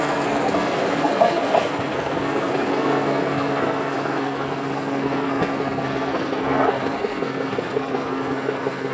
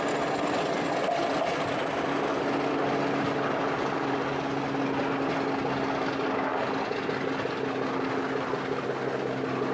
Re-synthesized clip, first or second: first